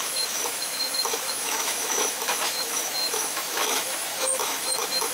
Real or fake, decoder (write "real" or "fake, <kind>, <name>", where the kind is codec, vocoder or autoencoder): fake, autoencoder, DAC-VAE